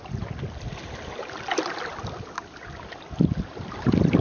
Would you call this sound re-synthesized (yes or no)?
no